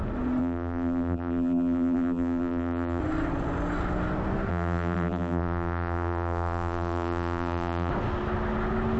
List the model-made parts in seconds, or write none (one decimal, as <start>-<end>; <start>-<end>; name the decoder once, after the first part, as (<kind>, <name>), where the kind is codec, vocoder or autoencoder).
0.4-3.0 (vocoder, BigVGAN v2); 4.5-7.9